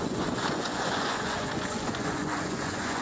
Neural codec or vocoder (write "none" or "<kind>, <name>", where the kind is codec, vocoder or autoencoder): vocoder, Vocos